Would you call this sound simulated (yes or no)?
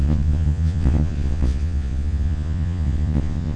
yes